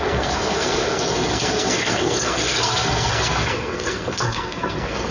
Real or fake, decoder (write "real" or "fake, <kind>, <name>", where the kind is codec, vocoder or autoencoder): fake, codec, SNAC